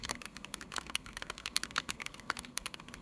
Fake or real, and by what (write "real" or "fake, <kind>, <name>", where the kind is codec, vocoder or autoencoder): fake, codec, SNAC